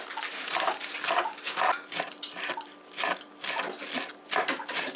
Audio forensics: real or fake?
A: real